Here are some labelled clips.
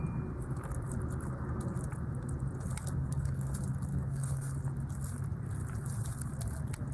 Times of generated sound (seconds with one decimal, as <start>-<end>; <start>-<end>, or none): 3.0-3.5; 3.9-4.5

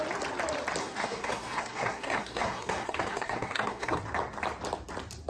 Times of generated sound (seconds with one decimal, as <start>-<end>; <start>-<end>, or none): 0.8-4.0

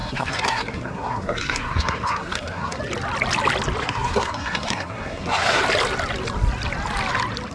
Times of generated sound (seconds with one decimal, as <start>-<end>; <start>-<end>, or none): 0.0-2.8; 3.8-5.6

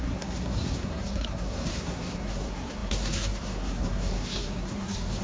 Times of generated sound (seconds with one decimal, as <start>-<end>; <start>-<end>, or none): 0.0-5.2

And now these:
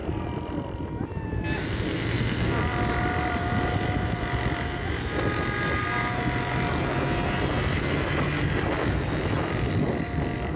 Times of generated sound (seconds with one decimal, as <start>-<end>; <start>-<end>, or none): none

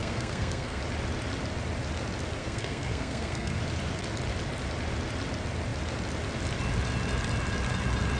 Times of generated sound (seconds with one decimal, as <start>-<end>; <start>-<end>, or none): 0.0-0.8; 2.4-3.6

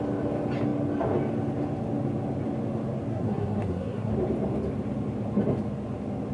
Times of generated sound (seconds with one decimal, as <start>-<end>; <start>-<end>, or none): 3.1-4.1

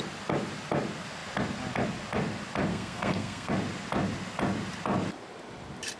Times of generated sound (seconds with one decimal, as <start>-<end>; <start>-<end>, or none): 2.7-3.5